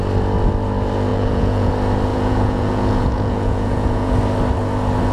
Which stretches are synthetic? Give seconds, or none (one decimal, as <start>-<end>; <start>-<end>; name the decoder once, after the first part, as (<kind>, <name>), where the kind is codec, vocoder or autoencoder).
1.1-1.7 (vocoder, Vocos); 2.1-4.1